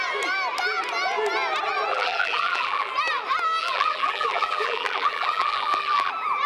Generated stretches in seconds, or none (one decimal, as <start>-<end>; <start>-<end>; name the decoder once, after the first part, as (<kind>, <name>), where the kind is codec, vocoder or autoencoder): 1.9-2.9 (vocoder, BigVGAN v2); 3.6-6.1